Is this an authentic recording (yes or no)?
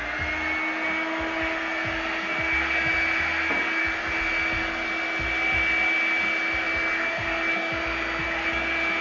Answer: yes